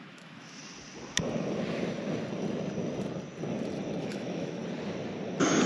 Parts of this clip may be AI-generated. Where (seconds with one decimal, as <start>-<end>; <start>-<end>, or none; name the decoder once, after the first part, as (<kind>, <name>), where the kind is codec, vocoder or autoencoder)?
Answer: 0.0-0.6 (autoencoder, DAC-VAE); 4.0-4.6